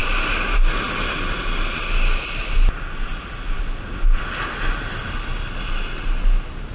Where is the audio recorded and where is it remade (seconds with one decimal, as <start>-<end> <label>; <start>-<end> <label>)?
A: 0.0-6.7 recorded

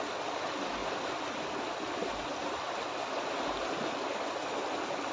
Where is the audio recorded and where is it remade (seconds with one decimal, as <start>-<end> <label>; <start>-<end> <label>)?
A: 0.0-5.1 recorded

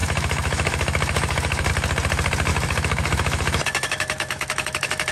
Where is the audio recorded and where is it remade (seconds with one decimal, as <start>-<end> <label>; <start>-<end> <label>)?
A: 0.0-1.7 remade; 1.7-2.5 recorded; 2.5-5.1 remade

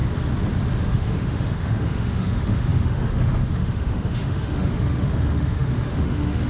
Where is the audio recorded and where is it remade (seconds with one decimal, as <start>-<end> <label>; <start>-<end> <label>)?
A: 0.0-0.8 recorded; 0.8-6.5 remade

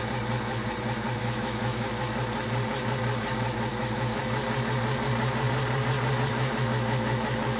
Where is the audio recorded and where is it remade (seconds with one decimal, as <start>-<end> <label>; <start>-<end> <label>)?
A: 0.0-1.2 recorded; 1.2-2.0 remade; 2.0-3.7 recorded; 3.7-4.2 remade; 4.2-6.3 recorded; 6.3-7.6 remade